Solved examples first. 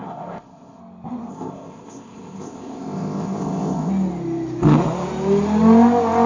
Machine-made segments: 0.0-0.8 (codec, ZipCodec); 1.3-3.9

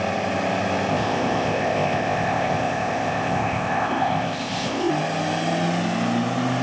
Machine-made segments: 0.9-4.9 (codec, ZipCodec)

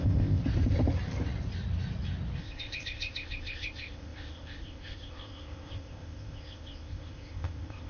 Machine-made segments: 0.0-0.4 (codec, ZipCodec); 2.4-7.9

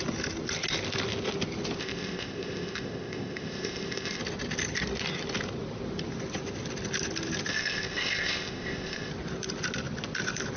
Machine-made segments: 1.8-4.2 (codec, ZipCodec); 7.5-9.1

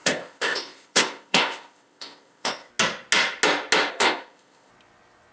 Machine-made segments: 0.0-2.7 (codec, ZipCodec); 3.9-4.7